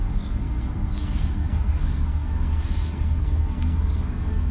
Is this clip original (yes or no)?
no